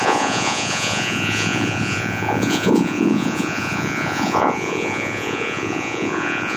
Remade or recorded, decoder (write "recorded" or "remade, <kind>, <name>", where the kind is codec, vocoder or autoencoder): remade, vocoder, Vocos